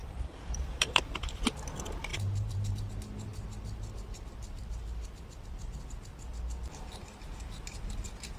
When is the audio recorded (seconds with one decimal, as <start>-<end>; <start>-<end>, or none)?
1.0-2.1; 2.9-8.4